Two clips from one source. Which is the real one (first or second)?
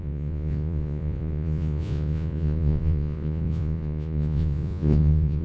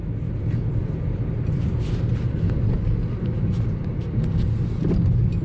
second